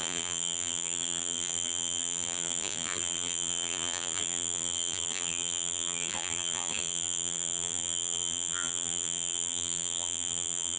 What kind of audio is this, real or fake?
fake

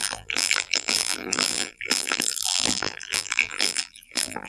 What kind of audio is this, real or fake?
fake